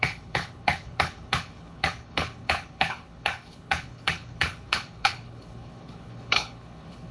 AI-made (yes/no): yes